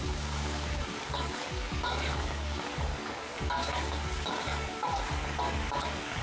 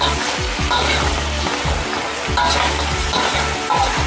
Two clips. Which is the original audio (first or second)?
second